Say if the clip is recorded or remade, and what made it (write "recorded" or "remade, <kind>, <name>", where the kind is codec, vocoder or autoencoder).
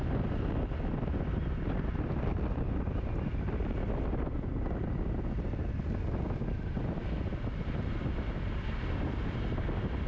recorded